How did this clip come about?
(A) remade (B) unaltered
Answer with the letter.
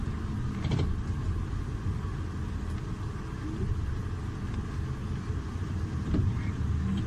B